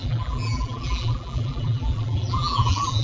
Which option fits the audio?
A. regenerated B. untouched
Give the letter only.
A